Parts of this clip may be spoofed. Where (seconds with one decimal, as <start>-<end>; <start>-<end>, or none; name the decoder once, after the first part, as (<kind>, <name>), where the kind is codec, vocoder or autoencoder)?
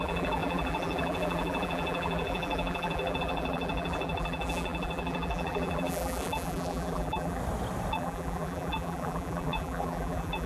0.0-7.4 (vocoder, BigVGAN v2); 7.9-10.5